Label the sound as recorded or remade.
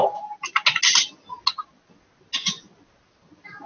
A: recorded